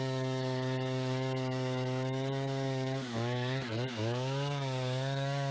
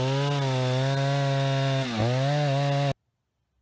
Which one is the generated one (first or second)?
first